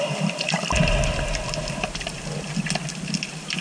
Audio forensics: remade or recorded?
recorded